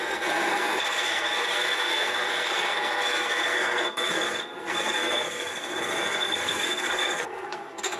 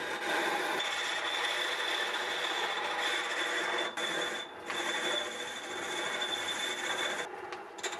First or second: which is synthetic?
first